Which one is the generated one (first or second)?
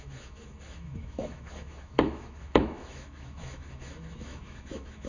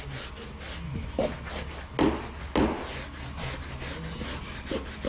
first